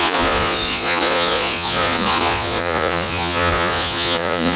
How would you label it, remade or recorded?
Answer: remade